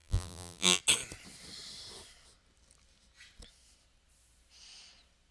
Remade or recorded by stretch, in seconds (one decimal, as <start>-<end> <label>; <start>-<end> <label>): 0.0-0.8 remade; 0.8-5.3 recorded